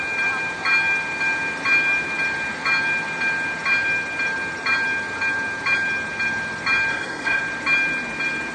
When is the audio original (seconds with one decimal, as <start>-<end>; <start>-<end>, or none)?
0.0-6.9; 7.4-8.5